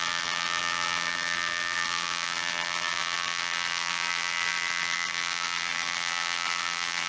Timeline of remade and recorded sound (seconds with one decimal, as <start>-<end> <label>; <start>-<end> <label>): 0.0-7.1 remade